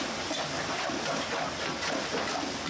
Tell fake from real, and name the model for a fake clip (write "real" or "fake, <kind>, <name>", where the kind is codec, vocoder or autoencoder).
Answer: real